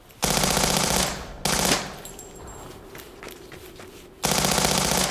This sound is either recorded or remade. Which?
recorded